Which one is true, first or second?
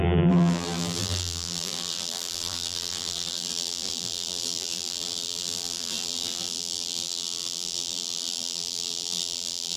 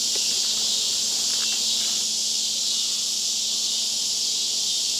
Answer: second